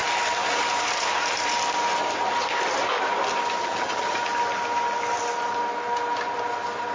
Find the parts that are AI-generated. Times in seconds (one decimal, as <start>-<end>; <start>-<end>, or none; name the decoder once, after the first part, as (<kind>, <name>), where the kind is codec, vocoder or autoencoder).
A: 3.6-4.2 (vocoder, HiFi-GAN)